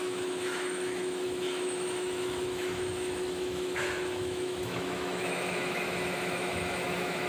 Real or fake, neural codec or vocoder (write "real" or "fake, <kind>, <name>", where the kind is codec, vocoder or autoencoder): fake, autoencoder, DAC-VAE